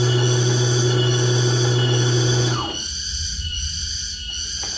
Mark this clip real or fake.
real